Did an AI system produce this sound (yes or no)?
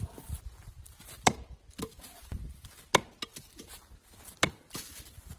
no